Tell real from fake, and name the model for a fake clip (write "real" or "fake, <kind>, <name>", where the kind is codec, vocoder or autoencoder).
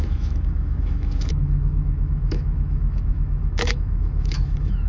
fake, autoencoder, DAC-VAE